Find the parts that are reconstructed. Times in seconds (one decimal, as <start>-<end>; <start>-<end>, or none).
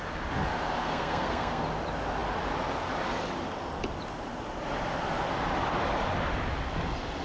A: 0.8-1.6